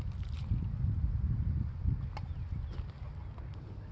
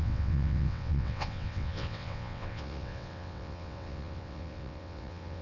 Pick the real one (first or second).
first